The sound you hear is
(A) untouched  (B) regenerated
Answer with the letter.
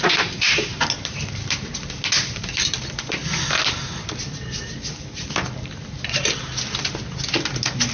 A